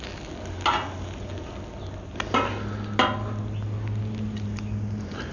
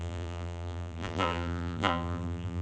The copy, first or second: second